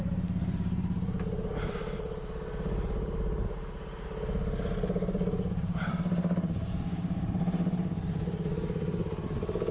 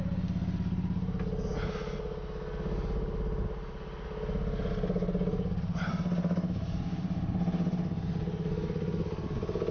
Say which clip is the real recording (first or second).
second